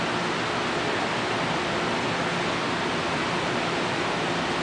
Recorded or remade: recorded